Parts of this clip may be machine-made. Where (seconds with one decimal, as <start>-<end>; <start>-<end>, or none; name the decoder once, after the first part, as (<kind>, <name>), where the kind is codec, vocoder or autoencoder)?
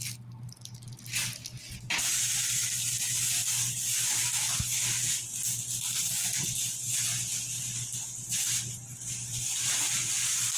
none